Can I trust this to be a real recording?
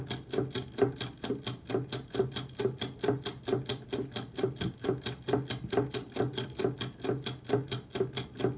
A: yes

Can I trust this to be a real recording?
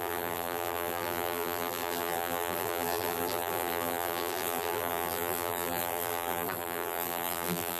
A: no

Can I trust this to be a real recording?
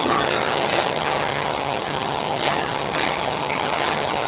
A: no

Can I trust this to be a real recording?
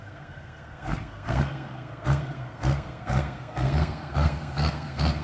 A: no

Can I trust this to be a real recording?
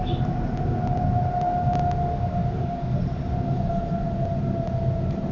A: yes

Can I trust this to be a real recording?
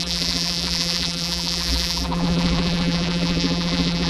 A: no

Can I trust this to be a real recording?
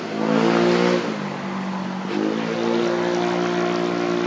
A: yes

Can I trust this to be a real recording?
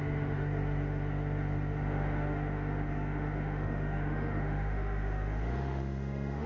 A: no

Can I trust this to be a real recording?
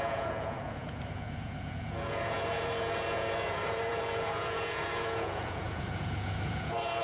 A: no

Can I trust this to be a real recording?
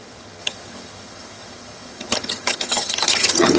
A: no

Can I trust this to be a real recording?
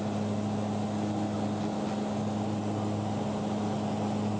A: yes